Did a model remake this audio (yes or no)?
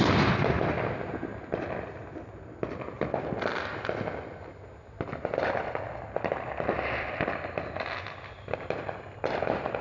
no